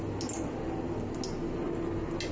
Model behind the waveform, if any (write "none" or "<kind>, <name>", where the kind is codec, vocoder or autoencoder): none